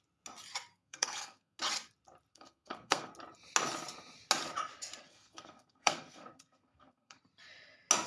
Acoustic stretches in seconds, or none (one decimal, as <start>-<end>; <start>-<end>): 0.0-0.7; 1.6-2.3; 3.1-5.0; 7.2-8.1